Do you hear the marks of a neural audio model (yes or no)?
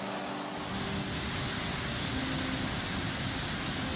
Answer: no